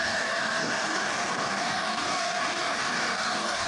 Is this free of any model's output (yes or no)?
no